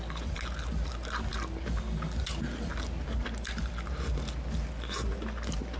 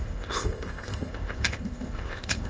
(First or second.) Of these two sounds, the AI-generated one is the second